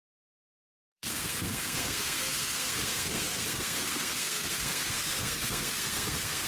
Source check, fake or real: fake